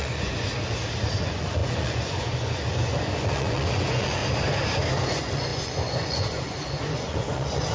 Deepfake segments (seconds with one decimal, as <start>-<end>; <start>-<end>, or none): 0.0-0.5; 1.1-4.2; 5.1-7.7